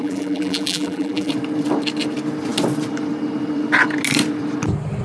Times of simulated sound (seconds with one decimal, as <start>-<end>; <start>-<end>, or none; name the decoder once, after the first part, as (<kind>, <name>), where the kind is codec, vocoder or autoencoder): 0.0-1.3 (vocoder, BigVGAN v2)